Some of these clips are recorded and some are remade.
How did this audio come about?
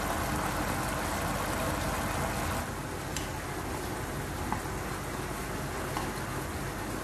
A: recorded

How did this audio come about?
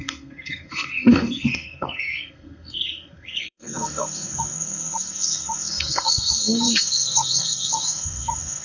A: remade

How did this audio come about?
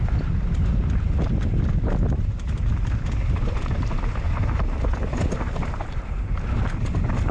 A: recorded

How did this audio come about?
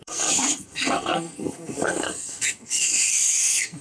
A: remade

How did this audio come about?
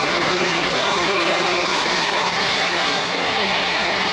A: remade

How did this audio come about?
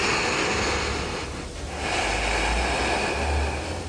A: recorded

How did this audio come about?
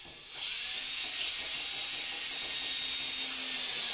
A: recorded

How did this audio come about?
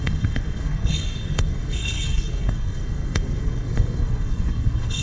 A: remade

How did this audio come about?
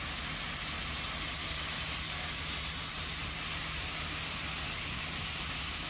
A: recorded